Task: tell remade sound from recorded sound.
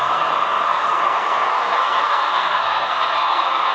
remade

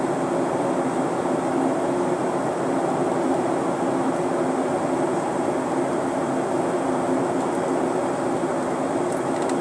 recorded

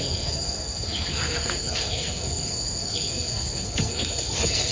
remade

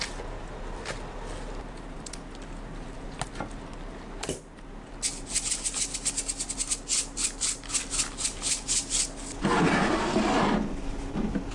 recorded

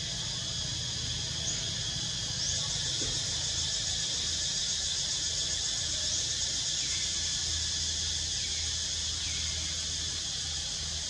recorded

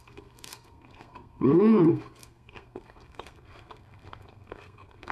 remade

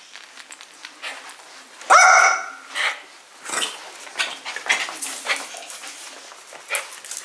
recorded